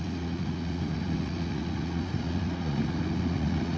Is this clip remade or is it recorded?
remade